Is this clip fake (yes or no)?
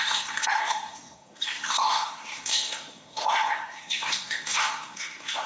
yes